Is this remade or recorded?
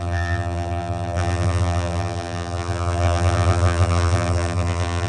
remade